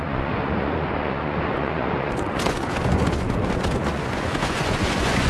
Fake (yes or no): yes